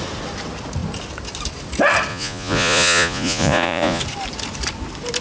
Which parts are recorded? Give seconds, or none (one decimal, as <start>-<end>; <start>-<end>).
0.0-2.1; 4.0-5.2